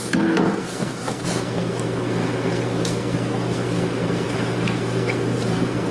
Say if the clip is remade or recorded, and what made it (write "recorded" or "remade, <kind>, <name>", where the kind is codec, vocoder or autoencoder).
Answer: remade, codec, SNAC